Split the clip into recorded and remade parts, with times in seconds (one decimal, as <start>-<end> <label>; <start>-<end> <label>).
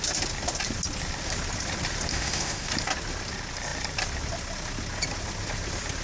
0.0-2.1 recorded; 2.1-2.7 remade; 2.7-6.0 recorded